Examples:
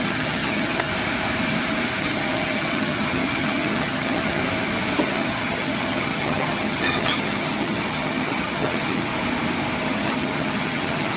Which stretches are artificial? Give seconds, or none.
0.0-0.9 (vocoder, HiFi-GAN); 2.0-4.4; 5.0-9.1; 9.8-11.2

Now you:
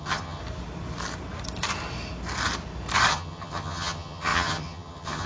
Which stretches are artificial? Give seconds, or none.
0.0-0.4 (vocoder, HiFi-GAN); 3.1-5.3

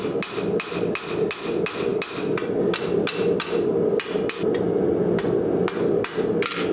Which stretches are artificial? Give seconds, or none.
none

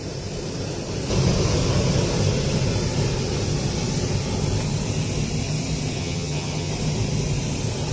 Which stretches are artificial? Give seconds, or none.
6.0-6.7 (vocoder, HiFi-GAN)

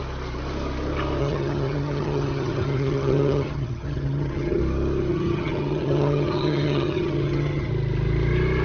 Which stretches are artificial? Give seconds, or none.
1.2-4.6 (vocoder, HiFi-GAN); 5.1-7.7

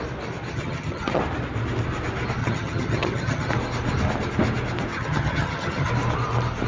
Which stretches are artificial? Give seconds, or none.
0.5-1.2 (vocoder, HiFi-GAN); 2.4-3.5; 4.9-5.9